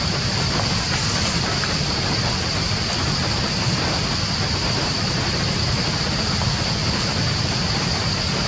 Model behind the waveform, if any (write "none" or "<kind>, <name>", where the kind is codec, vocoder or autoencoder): none